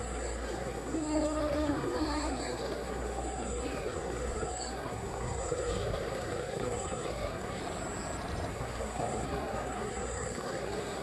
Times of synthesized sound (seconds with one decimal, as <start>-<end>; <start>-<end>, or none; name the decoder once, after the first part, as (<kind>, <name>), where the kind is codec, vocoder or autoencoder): 0.0-7.6 (codec, SNAC); 8.5-11.0